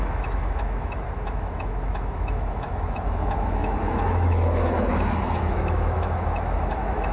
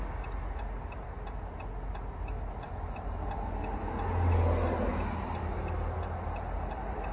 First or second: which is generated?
first